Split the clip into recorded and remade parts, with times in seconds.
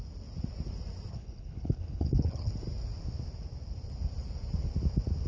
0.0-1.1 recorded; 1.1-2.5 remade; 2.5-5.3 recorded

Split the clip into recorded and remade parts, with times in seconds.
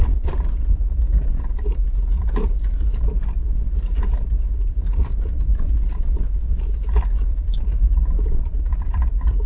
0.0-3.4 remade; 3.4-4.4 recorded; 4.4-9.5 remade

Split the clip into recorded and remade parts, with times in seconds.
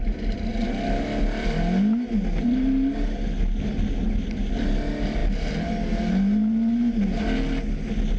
0.0-8.2 recorded